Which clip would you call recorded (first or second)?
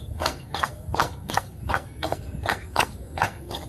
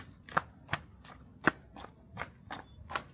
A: second